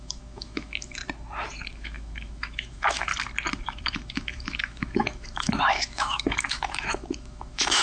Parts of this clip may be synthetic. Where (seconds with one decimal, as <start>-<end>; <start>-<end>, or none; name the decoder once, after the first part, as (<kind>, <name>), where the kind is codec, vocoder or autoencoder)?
0.0-1.0 (autoencoder, DAC-VAE); 1.7-3.1; 3.6-7.8